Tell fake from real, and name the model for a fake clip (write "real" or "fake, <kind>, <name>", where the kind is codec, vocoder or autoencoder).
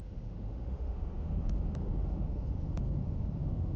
fake, autoencoder, DAC-VAE